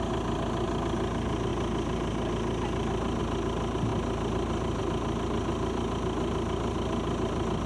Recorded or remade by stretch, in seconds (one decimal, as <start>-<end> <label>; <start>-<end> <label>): 0.0-7.7 recorded